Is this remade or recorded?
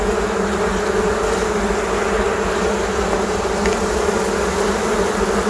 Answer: recorded